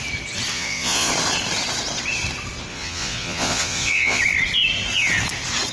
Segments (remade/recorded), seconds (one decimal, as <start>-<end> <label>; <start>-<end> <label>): 0.0-0.5 recorded; 0.5-1.1 remade; 1.1-2.7 recorded; 2.7-4.2 remade; 4.2-5.7 recorded